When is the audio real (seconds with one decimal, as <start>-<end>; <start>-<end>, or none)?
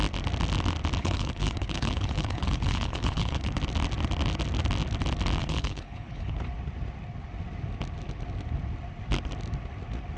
0.0-1.0; 3.6-5.4; 6.4-10.2